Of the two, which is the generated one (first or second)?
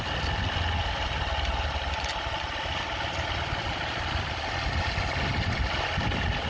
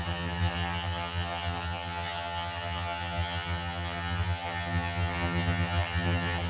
second